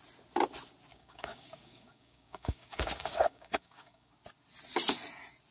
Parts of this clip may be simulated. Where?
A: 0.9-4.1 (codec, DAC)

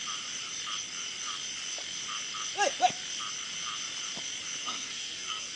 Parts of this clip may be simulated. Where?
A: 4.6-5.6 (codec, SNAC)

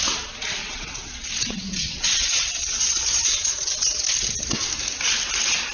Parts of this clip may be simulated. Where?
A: 0.6-4.0 (vocoder, WaveNeXt)